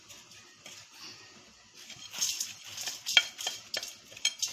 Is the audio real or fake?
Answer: real